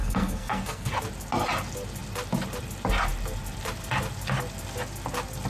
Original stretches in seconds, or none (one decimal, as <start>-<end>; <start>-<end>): 0.9-5.5